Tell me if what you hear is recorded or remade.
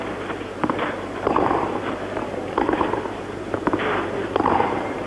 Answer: remade